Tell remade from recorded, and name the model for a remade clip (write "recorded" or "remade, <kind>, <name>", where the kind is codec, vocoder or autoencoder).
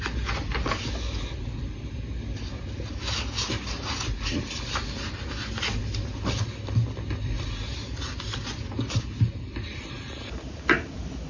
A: recorded